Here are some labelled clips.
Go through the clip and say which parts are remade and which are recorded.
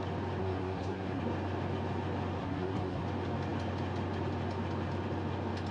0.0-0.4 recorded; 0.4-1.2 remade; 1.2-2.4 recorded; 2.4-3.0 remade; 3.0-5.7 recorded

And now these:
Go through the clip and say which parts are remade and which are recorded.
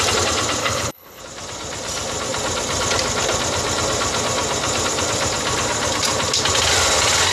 0.0-0.6 recorded; 0.6-1.2 remade; 1.2-7.3 recorded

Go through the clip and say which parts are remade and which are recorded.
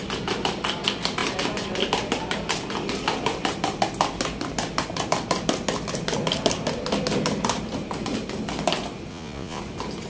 0.0-9.1 recorded; 9.1-9.6 remade; 9.6-10.1 recorded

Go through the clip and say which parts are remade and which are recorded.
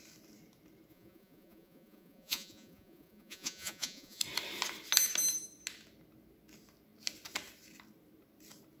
0.0-0.9 recorded; 0.9-4.2 remade; 4.2-8.8 recorded